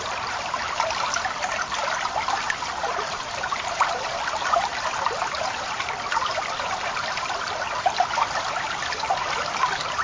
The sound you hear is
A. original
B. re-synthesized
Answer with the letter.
B